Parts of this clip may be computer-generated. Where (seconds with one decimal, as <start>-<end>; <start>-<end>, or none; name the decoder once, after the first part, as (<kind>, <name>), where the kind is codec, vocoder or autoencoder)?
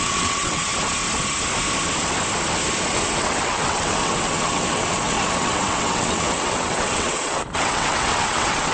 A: 0.0-0.7 (vocoder, WaveNeXt); 2.9-8.7